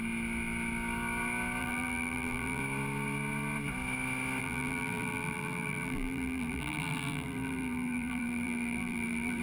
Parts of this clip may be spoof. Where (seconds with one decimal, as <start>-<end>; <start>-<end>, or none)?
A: 1.6-2.6; 4.4-9.4